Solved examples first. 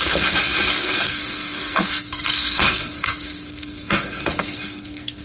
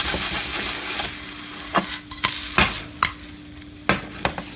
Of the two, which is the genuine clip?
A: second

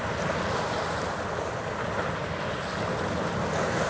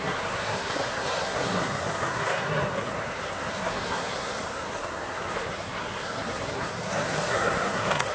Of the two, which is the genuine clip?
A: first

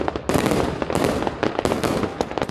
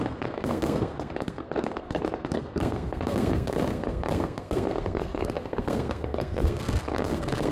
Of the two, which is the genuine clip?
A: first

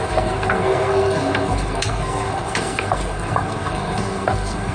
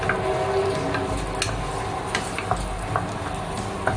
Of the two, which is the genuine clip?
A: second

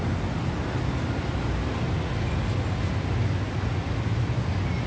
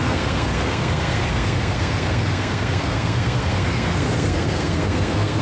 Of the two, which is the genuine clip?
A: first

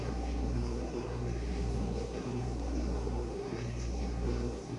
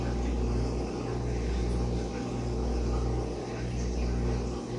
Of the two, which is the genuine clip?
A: second